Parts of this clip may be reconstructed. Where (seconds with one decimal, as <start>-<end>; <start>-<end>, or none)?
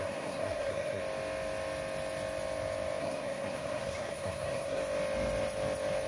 0.0-1.0; 3.0-4.8